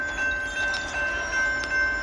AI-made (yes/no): no